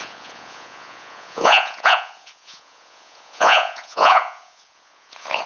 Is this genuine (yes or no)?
no